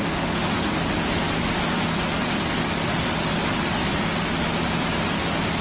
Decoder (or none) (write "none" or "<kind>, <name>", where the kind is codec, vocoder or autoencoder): none